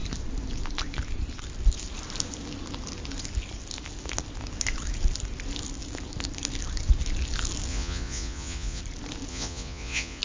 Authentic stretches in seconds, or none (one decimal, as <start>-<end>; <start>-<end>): 0.0-7.7; 8.8-9.3